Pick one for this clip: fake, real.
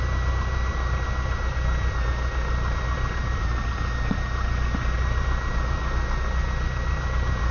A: real